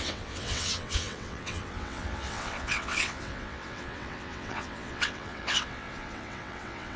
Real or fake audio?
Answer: fake